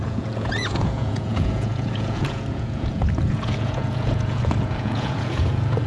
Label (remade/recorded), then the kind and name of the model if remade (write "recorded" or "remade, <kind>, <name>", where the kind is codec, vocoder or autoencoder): remade, vocoder, Vocos